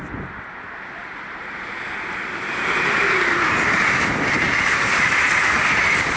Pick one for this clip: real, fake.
real